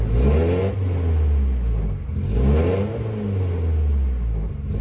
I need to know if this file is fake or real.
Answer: real